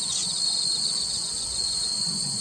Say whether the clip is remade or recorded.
remade